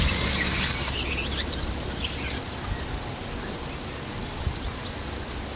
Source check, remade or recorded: recorded